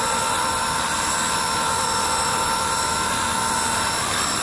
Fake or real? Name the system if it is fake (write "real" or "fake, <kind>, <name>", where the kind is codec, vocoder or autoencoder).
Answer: real